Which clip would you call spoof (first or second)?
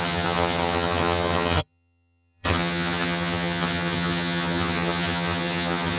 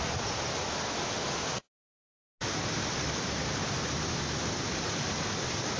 first